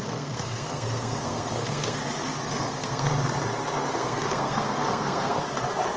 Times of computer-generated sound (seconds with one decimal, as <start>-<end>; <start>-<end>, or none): 0.0-2.0; 2.5-3.1; 3.9-5.4